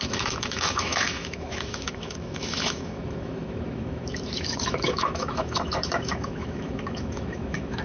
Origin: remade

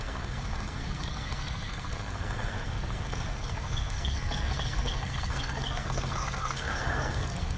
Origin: remade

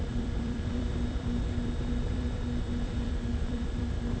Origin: remade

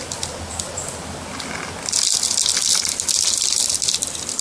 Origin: recorded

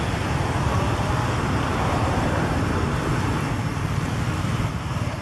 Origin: recorded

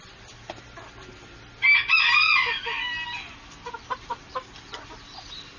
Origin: recorded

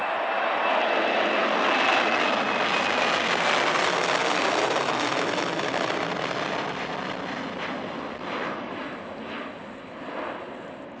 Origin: recorded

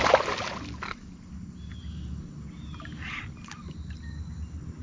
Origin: recorded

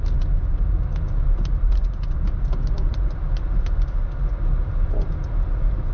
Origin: recorded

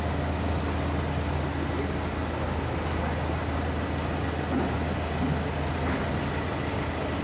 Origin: recorded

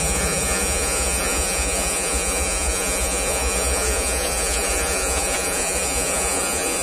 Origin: remade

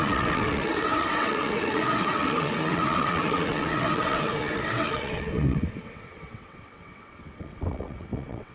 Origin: remade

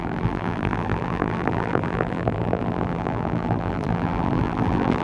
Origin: remade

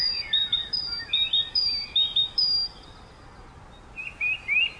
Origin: recorded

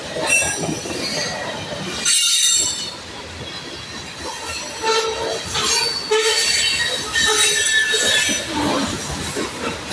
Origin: recorded